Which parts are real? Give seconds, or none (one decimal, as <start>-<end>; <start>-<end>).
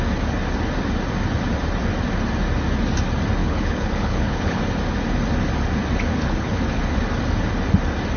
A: 0.0-3.4; 4.6-6.1; 6.8-8.2